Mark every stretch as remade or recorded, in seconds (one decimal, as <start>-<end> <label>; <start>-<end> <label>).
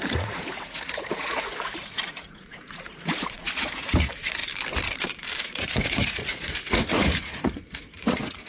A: 0.0-4.4 remade; 4.4-5.4 recorded; 5.4-8.5 remade